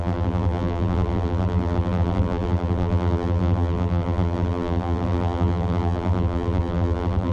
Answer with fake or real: fake